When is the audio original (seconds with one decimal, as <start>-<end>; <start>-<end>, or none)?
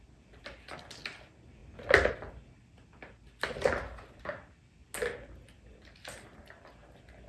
0.0-7.3